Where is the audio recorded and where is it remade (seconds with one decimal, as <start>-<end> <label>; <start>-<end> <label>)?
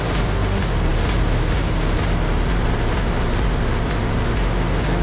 0.0-5.0 recorded